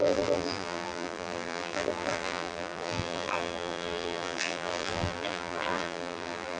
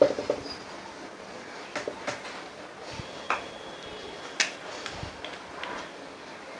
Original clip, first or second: second